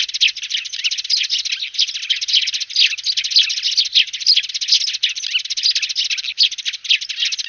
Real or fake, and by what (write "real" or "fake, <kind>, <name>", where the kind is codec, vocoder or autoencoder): real